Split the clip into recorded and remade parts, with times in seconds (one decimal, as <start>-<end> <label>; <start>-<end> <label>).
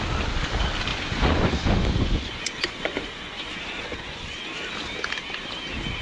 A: 0.0-0.9 recorded; 0.9-4.5 remade; 4.5-6.0 recorded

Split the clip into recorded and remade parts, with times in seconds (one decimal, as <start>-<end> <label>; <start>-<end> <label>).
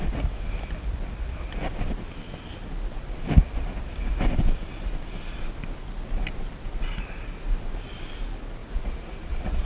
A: 0.0-8.6 recorded; 8.6-9.6 remade